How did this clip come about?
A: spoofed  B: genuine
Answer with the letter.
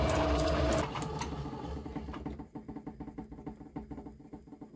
B